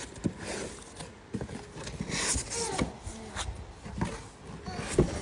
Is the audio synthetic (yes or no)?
no